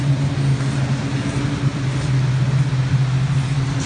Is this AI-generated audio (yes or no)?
no